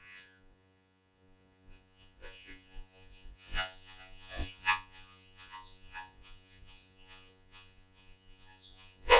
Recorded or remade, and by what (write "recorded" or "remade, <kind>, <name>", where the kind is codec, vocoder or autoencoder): remade, vocoder, Vocos